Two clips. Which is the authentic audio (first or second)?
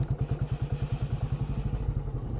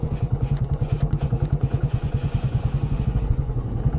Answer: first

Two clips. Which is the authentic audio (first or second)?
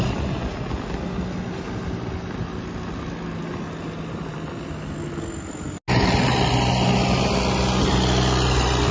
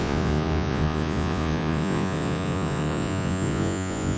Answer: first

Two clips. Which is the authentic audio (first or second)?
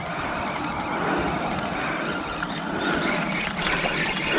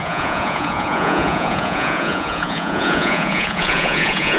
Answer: first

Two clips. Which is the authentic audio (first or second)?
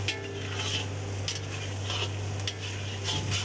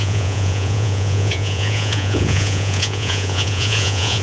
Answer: first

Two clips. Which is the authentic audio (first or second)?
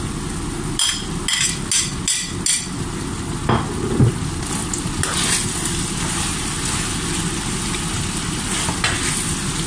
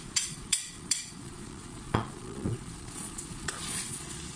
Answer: first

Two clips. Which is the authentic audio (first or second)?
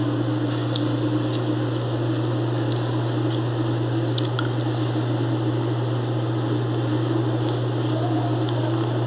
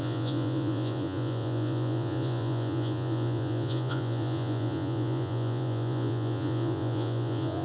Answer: first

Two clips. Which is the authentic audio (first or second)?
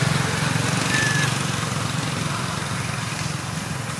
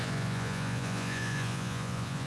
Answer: first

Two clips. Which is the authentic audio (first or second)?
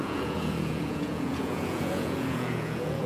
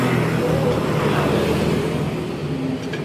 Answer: second